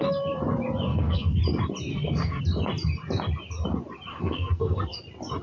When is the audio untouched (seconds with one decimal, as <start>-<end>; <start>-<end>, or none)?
0.0-0.9; 1.4-1.9; 2.4-4.1; 5.0-5.4